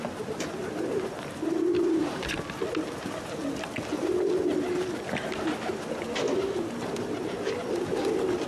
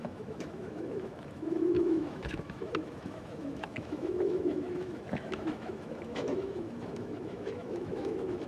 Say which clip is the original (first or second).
first